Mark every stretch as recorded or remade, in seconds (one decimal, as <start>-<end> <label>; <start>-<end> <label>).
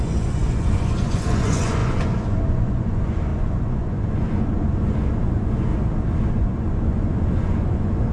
0.0-5.7 remade; 5.7-6.3 recorded; 6.3-8.1 remade